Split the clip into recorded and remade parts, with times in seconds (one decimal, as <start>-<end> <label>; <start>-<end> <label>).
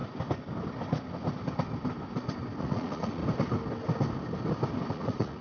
0.0-2.6 recorded; 2.6-3.2 remade; 3.2-4.9 recorded; 4.9-5.4 remade